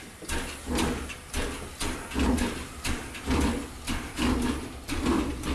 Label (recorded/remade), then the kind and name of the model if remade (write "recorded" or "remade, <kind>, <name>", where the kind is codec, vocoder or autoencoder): recorded